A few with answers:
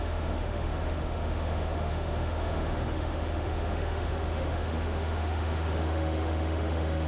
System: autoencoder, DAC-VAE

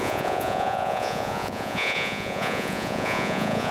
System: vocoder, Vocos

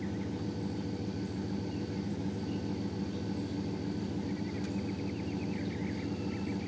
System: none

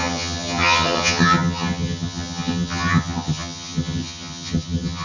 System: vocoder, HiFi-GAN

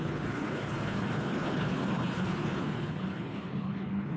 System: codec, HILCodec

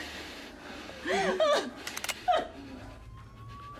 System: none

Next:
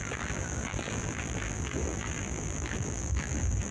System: vocoder, BigVGAN v2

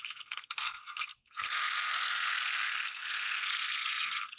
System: codec, SNAC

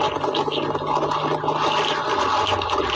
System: none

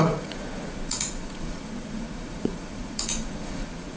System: vocoder, Vocos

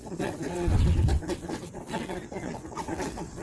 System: vocoder, WaveNeXt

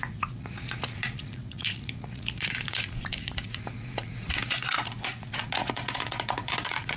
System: vocoder, Vocos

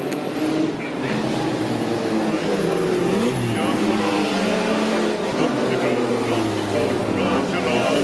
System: none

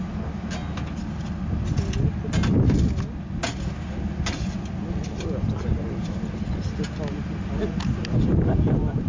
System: none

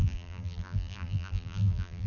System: vocoder, BigVGAN v2